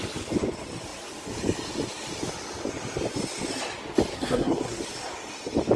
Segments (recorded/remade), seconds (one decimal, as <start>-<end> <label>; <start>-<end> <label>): 0.0-4.1 recorded; 4.1-4.8 remade; 4.8-5.8 recorded